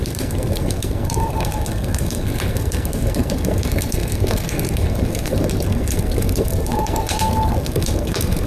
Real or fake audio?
fake